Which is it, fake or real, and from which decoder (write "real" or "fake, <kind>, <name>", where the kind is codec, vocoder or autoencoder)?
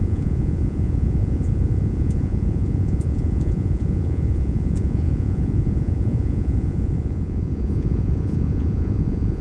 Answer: fake, vocoder, Vocos